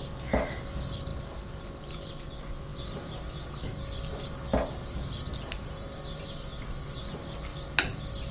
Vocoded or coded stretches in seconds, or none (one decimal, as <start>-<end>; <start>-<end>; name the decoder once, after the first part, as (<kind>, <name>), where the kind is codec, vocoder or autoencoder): none